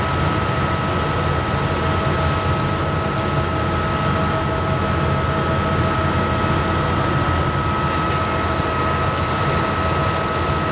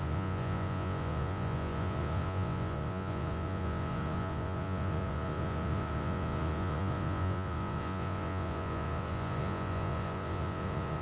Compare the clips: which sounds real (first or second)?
first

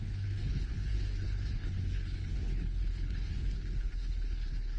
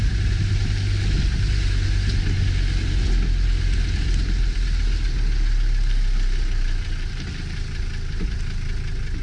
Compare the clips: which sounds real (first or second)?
second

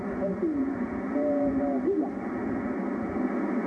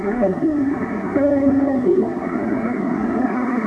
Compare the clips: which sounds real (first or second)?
first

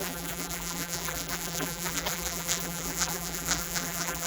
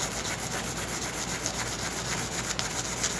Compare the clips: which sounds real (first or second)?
second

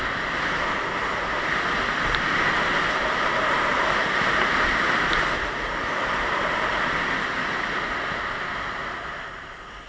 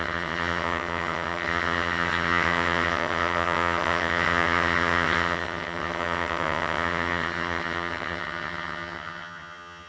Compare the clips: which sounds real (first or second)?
first